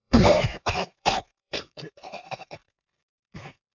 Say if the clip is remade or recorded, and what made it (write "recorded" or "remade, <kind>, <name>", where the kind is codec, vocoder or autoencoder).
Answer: remade, codec, SNAC